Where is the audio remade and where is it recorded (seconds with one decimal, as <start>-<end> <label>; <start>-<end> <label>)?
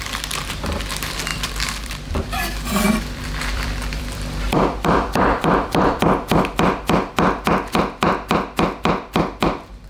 0.0-1.3 recorded; 1.3-6.0 remade; 6.0-9.9 recorded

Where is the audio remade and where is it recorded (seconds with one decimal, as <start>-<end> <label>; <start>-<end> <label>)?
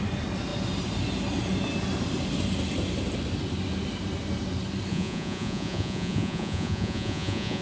0.0-4.9 recorded; 4.9-7.6 remade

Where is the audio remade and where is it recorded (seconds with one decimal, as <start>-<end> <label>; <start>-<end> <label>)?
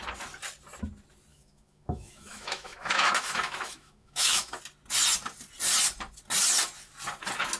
0.0-1.3 recorded; 1.3-4.6 remade; 4.6-7.6 recorded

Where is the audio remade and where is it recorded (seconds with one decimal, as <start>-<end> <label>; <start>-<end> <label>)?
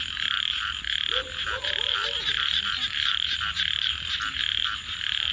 0.0-5.3 recorded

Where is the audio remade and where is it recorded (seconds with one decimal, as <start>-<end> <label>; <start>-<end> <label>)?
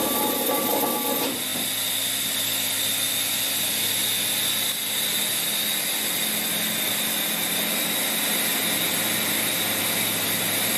0.0-10.8 recorded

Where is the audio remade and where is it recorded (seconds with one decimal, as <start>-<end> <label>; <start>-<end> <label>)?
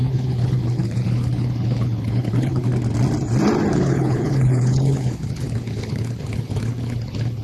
0.0-2.7 remade; 2.7-3.7 recorded; 3.7-7.4 remade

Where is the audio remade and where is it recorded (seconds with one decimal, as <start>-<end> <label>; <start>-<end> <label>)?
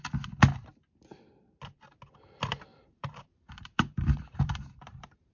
0.0-2.7 recorded; 2.7-5.3 remade